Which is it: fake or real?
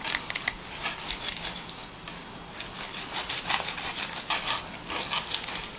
real